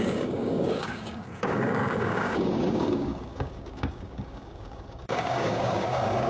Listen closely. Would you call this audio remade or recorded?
remade